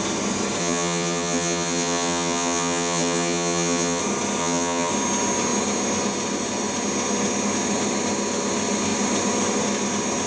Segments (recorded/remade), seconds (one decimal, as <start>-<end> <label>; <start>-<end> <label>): 0.0-0.6 recorded; 0.6-4.0 remade; 4.0-4.4 recorded; 4.4-4.9 remade; 4.9-10.3 recorded